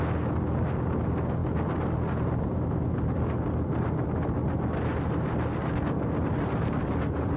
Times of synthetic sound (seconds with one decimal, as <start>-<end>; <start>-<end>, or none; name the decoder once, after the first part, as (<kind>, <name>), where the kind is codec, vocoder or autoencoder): none